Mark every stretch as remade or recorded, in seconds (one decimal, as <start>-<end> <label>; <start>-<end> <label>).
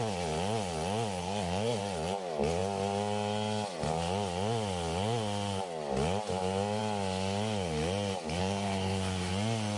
0.0-1.2 recorded; 1.2-1.8 remade; 1.8-8.4 recorded; 8.4-9.3 remade; 9.3-9.8 recorded